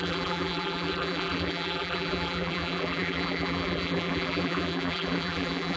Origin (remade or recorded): remade